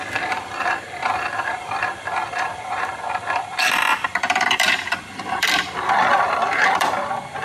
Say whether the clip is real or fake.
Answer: fake